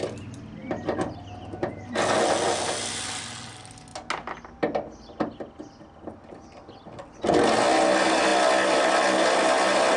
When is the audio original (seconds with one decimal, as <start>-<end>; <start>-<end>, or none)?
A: 0.0-10.0